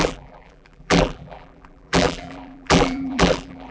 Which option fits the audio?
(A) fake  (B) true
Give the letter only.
A